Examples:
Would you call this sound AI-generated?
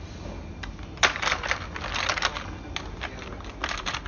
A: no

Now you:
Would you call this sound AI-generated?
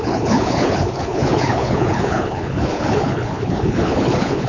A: yes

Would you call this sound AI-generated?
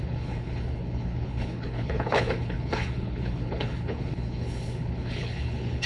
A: yes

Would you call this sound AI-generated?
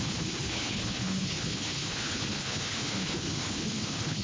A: yes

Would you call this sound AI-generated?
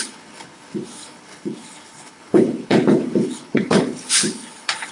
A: yes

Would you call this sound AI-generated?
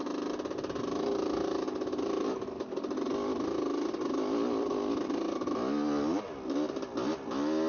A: no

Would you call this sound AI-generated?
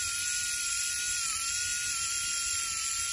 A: no